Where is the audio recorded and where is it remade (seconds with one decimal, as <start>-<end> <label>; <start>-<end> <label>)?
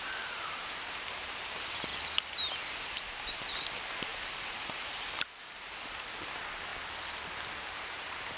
0.0-1.9 remade; 1.9-3.1 recorded; 3.1-6.7 remade; 6.7-7.6 recorded; 7.6-8.4 remade